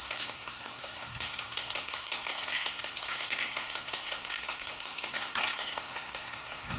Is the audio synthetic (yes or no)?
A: yes